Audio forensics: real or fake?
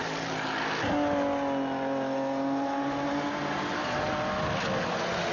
real